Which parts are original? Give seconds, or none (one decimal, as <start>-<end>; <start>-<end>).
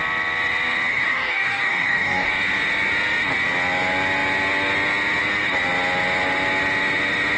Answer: 0.0-0.9; 2.3-7.4